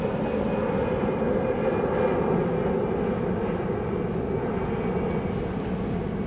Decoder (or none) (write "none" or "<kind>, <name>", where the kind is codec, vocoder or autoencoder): none